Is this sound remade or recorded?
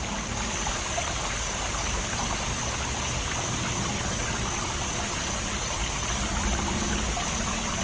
recorded